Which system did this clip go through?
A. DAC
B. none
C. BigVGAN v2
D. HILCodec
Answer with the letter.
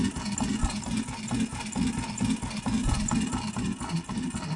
B